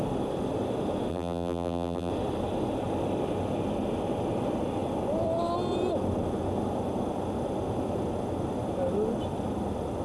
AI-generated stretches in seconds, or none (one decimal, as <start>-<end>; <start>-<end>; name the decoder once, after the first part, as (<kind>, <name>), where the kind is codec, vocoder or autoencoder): 1.1-2.1 (vocoder, BigVGAN v2)